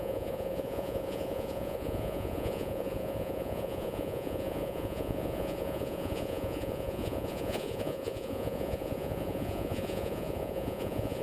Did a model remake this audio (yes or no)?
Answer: yes